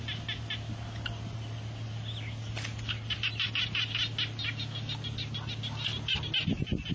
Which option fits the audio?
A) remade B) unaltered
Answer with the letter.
B